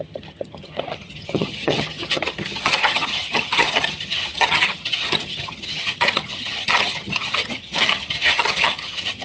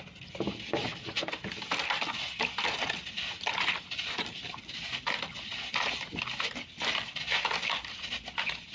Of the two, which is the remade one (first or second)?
first